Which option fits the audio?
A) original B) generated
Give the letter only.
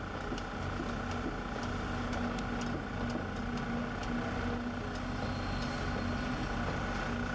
A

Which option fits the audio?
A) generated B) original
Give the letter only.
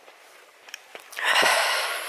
B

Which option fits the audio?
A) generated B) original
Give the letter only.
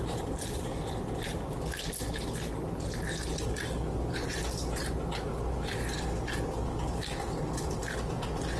B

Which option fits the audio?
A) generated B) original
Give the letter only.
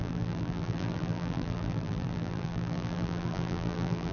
A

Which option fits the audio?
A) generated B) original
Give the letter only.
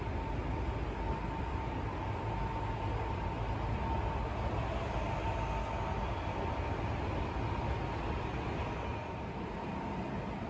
B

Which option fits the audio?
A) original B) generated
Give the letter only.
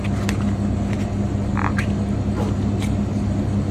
A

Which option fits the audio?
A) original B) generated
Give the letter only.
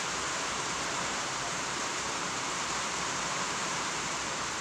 B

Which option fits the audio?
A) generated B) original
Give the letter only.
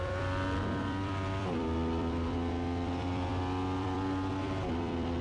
A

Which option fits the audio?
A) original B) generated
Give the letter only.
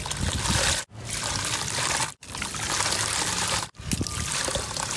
A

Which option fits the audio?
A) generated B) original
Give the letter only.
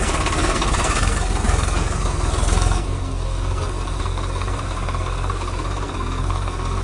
A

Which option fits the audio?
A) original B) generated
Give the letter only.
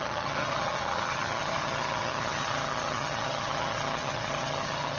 B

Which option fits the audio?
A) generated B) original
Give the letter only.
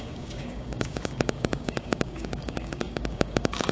A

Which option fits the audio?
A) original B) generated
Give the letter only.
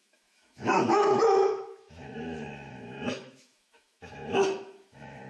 B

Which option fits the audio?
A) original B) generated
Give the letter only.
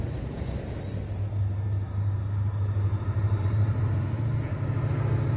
A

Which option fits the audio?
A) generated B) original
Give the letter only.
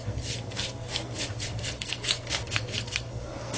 A